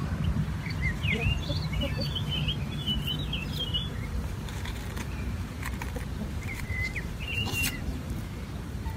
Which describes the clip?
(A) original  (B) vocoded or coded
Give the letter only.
B